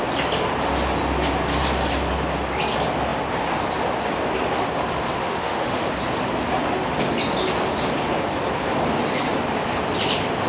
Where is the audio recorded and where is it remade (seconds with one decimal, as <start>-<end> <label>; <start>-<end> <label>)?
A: 0.0-5.2 recorded; 5.2-5.9 remade; 5.9-10.5 recorded